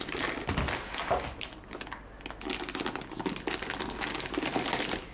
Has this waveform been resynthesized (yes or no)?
no